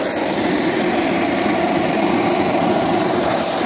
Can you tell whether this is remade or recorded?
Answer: remade